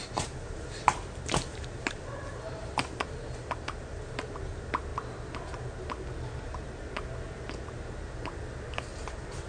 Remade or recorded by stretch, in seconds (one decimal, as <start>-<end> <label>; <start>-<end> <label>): 0.0-4.2 remade; 4.2-8.9 recorded; 8.9-9.5 remade